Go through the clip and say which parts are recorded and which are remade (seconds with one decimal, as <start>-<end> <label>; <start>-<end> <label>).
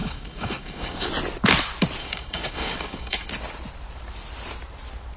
0.0-1.1 remade; 1.1-2.0 recorded; 2.0-3.3 remade; 3.3-5.2 recorded